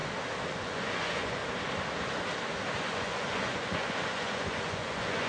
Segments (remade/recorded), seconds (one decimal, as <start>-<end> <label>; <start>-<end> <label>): 0.0-0.5 recorded; 0.5-1.4 remade; 1.4-2.8 recorded; 2.8-5.3 remade